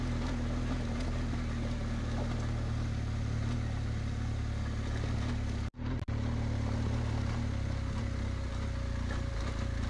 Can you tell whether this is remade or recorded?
recorded